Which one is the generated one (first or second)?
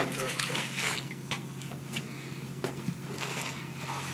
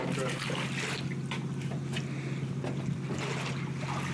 first